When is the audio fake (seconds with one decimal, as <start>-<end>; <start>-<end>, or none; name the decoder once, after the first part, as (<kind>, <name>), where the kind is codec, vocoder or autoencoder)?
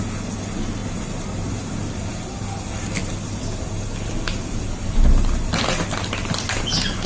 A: none